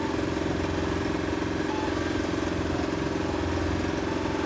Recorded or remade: recorded